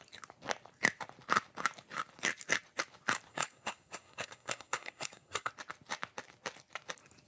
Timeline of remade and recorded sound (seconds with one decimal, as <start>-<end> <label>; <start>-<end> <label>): 0.0-3.3 recorded; 3.3-5.5 remade; 5.5-7.3 recorded